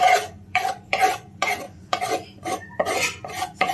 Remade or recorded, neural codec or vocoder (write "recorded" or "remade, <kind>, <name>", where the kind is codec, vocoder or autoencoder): remade, vocoder, Vocos